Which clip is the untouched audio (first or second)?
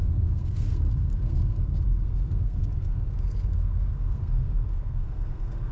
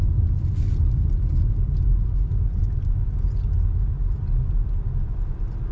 second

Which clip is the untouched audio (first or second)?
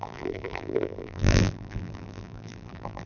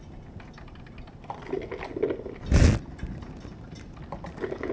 second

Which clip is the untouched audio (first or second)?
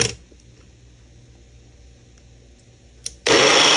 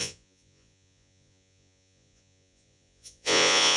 first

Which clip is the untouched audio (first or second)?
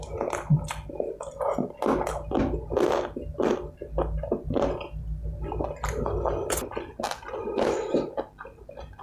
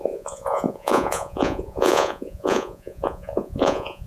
first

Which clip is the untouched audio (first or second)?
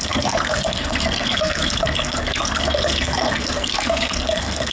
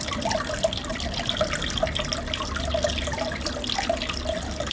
second